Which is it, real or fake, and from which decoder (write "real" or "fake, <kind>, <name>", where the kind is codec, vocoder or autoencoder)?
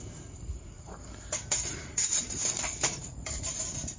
fake, vocoder, BigVGAN v2